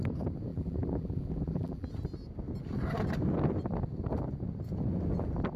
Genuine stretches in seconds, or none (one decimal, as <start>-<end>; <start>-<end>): 0.0-0.5; 1.9-5.6